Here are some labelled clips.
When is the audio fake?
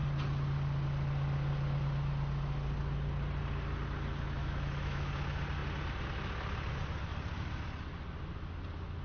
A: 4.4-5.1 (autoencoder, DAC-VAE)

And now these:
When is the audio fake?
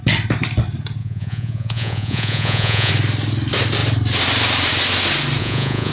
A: 1.0-2.9 (vocoder, Vocos); 5.4-5.9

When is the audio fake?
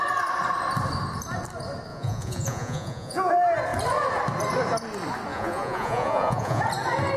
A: 1.9-3.3 (vocoder, Vocos); 5.3-6.6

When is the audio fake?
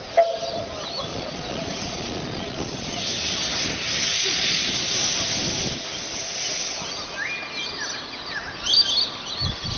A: 1.1-3.0 (vocoder, Vocos); 4.1-4.8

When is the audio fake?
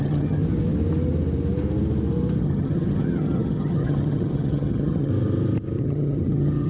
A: 0.0-0.4 (vocoder, HiFi-GAN); 2.4-5.1; 5.8-6.7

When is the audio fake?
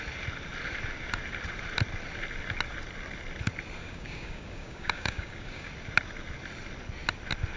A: 3.8-5.7 (codec, DAC)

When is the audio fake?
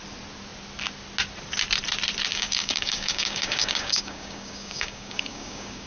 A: 2.3-5.9 (codec, DAC)